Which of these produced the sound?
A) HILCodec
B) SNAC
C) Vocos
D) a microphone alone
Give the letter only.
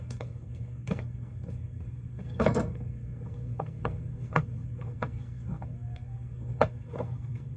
B